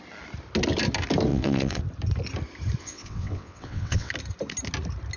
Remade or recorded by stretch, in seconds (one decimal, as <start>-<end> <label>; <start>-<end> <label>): 0.0-1.3 recorded; 1.3-1.8 remade; 1.8-2.8 recorded; 2.8-4.1 remade; 4.1-5.2 recorded